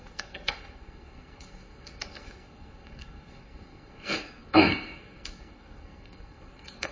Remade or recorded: remade